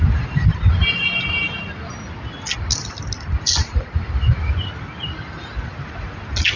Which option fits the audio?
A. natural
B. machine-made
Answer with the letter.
A